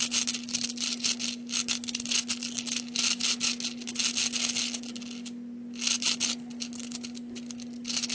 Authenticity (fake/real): real